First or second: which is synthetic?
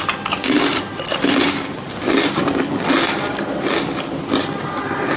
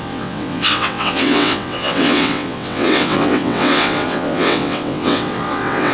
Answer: second